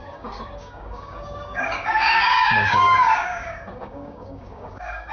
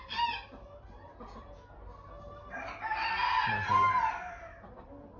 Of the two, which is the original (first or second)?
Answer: second